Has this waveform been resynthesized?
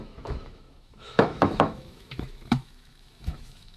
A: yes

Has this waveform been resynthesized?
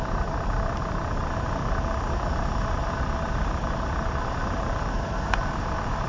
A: no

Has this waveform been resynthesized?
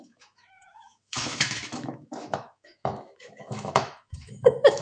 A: yes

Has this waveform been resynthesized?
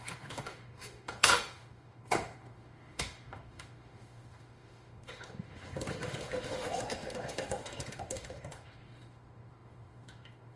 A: yes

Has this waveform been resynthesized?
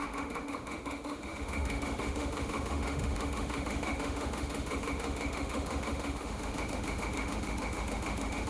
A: yes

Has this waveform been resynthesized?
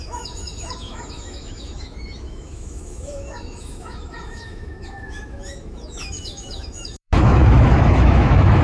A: yes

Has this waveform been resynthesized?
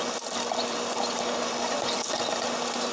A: no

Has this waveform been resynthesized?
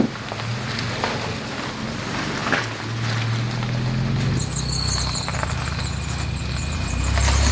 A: no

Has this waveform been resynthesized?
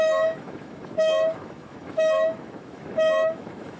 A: yes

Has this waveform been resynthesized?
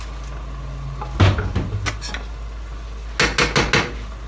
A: no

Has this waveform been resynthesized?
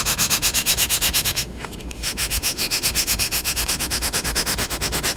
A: yes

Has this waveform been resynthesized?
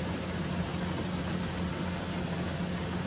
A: no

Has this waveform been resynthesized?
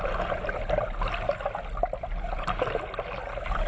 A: no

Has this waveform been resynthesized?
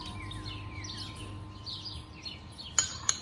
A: no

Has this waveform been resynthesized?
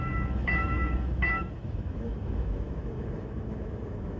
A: yes